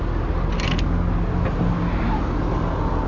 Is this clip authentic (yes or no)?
yes